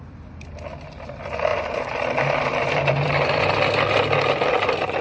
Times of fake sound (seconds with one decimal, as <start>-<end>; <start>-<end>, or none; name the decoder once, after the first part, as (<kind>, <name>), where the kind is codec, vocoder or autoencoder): 1.5-3.4 (vocoder, BigVGAN v2)